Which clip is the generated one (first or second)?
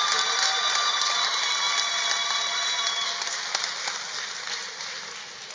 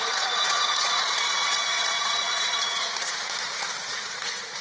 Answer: second